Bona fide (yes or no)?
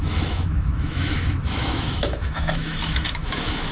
no